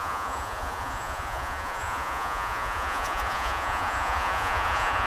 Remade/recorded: remade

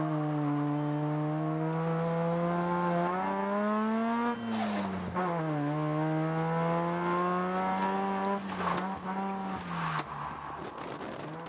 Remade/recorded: recorded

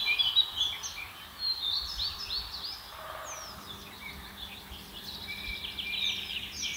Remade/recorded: recorded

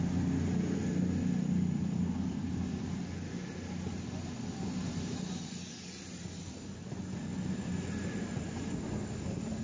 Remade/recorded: recorded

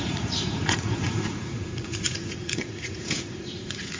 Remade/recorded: remade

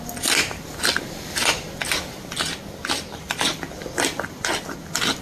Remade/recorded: recorded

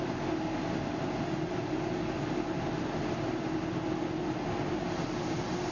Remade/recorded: recorded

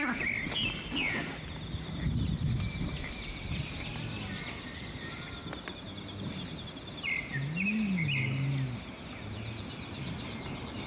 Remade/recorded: recorded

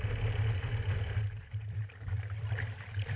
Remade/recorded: recorded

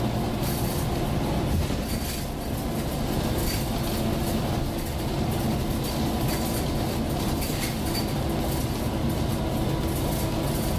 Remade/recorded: recorded